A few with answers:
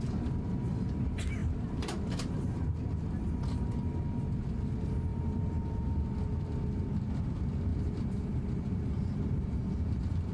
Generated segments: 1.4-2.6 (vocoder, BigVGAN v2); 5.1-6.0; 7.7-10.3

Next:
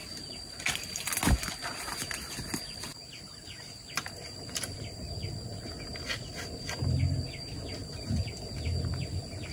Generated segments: 2.3-2.9 (vocoder, BigVGAN v2); 3.6-8.2; 8.9-9.5

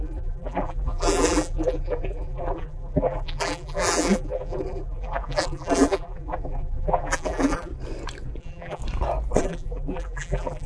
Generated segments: 0.0-7.7 (vocoder, BigVGAN v2); 8.4-8.8; 9.4-10.7

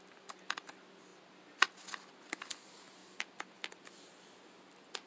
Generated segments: none

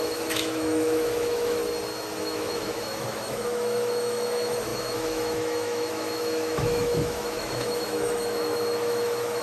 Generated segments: 0.0-1.6 (autoencoder, DAC-VAE); 2.2-9.4

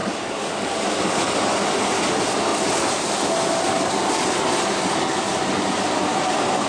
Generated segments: 0.0-0.8 (codec, DAC)

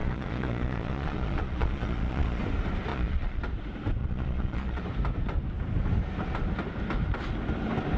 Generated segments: 0.0-2.4 (vocoder, Vocos); 2.9-3.4; 4.0-4.8

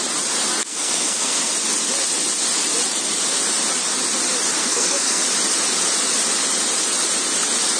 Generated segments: 0.6-1.5 (codec, SNAC); 4.6-5.2